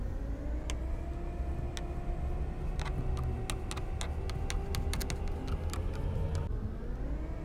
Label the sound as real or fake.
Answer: real